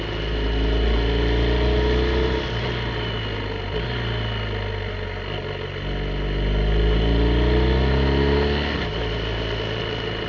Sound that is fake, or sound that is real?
real